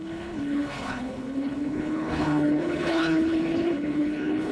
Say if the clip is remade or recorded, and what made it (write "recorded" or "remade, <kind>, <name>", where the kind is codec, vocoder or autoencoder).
remade, codec, HILCodec